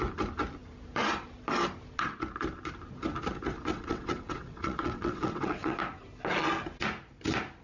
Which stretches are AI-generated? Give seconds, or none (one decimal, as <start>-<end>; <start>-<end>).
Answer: 3.7-5.8